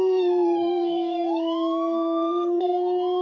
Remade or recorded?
remade